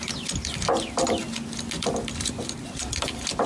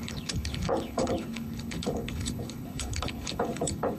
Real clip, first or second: first